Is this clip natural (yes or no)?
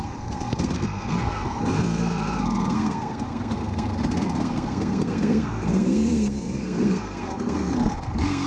no